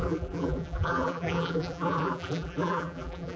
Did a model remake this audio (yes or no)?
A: yes